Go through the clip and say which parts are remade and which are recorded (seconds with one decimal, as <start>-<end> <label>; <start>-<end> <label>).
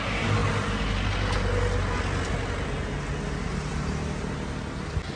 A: 0.0-5.2 recorded